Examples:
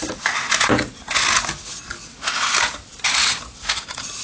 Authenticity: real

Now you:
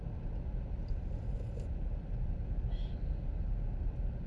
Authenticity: real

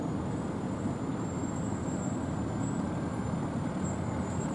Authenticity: real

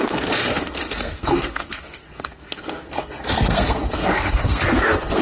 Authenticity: fake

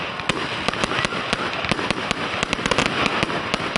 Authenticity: real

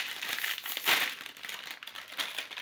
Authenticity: real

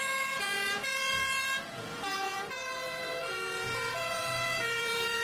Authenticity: fake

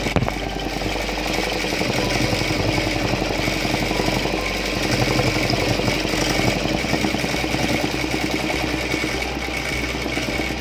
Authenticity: real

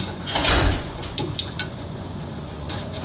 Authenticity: fake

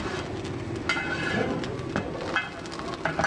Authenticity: real